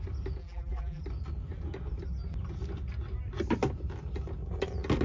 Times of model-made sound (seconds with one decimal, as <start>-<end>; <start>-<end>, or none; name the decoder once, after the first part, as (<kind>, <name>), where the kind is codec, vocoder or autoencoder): 0.4-1.0 (vocoder, BigVGAN v2)